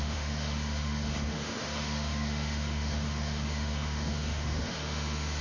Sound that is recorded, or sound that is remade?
remade